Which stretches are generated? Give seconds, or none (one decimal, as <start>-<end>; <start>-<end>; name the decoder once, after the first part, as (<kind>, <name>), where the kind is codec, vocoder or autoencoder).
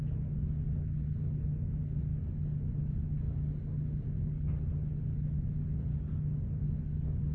none